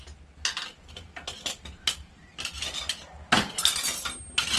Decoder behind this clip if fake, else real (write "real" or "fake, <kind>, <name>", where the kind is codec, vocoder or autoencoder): real